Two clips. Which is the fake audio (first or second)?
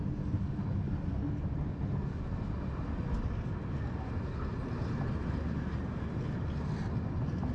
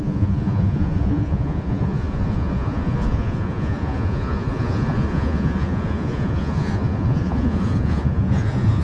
second